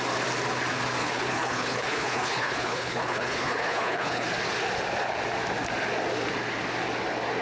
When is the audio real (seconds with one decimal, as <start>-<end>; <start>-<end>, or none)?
0.0-1.0; 4.3-7.4